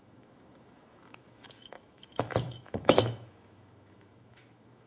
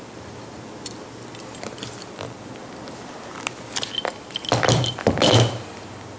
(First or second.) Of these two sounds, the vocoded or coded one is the first